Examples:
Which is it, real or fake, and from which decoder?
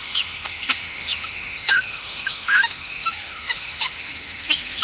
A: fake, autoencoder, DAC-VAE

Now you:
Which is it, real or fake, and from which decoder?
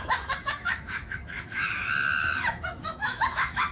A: fake, autoencoder, DAC-VAE